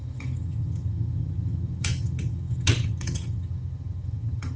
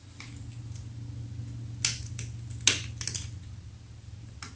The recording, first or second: second